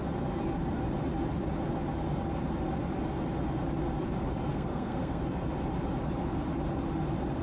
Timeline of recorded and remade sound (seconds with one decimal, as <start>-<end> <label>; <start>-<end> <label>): 0.0-4.5 recorded; 4.5-5.2 remade; 5.2-7.4 recorded